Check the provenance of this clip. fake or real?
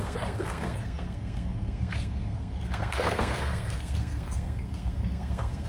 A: fake